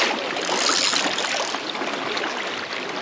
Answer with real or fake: real